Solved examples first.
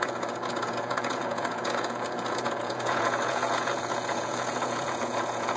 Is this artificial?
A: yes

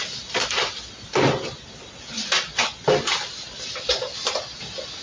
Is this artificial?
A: no